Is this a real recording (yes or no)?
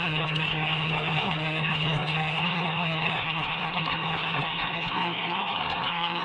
no